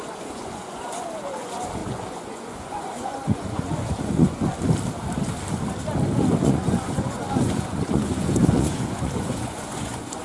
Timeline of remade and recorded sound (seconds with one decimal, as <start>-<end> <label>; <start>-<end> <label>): 0.0-4.4 remade; 4.4-6.4 recorded; 6.4-10.2 remade